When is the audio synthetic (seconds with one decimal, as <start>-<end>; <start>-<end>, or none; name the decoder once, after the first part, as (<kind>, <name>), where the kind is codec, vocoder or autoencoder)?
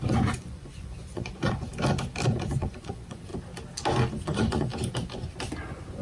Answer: 0.0-1.7 (vocoder, Vocos); 2.3-3.3; 4.1-4.7; 5.6-6.0